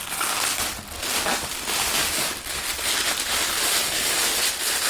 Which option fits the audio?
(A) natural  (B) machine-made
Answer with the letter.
A